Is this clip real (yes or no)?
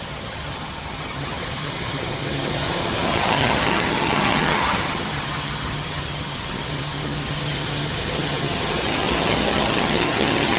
no